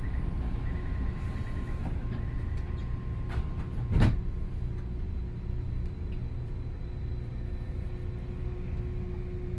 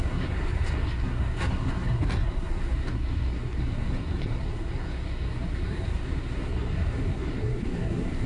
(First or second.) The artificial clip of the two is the second